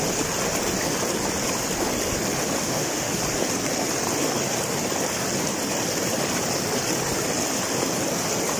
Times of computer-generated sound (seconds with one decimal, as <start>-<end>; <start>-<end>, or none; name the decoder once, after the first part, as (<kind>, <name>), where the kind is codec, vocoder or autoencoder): 2.6-3.1 (autoencoder, DAC-VAE)